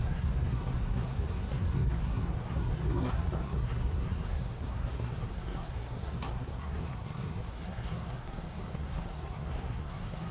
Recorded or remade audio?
remade